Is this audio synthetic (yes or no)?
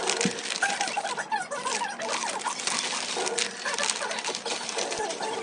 no